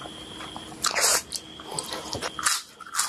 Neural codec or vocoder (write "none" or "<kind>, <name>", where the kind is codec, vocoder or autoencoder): none